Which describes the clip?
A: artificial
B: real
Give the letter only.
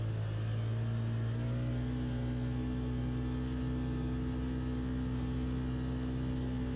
B